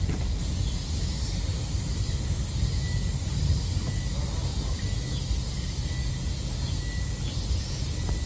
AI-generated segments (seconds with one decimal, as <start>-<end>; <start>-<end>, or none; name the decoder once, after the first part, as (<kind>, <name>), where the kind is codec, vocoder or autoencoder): 1.5-2.1 (vocoder, BigVGAN v2)